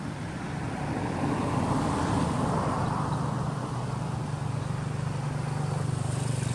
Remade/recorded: recorded